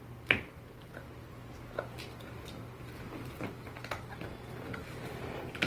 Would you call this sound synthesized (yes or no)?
no